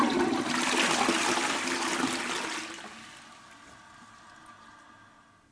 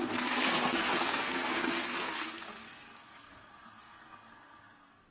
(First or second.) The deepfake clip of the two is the second